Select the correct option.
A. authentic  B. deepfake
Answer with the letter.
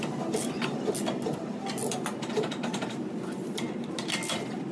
A